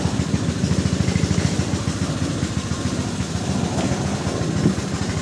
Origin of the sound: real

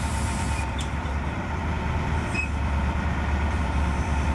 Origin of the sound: fake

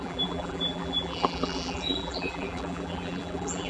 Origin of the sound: fake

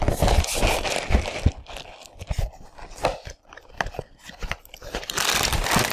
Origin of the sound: fake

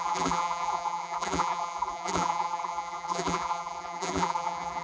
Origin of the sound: fake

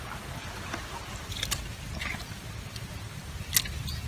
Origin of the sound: real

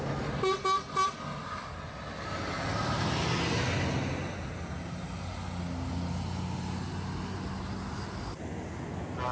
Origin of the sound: real